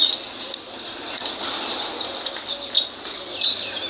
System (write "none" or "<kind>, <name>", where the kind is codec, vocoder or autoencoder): none